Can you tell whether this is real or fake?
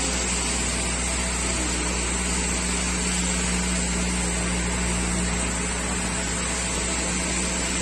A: real